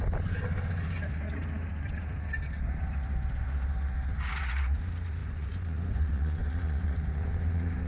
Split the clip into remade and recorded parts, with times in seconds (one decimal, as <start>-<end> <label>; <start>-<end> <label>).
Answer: 0.0-5.2 recorded; 5.2-7.9 remade